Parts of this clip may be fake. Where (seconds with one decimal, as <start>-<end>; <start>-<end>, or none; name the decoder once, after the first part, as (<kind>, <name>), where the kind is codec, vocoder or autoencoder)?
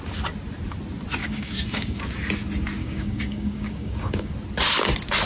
1.2-2.0 (codec, DAC); 2.8-4.3